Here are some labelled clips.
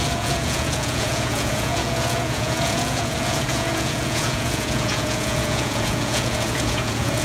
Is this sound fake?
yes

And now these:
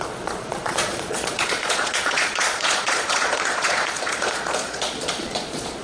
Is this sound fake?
yes